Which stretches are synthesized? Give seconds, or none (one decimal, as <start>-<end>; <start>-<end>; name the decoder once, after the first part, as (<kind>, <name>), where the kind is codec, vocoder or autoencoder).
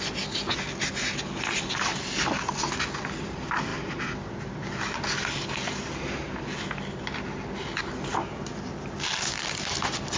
none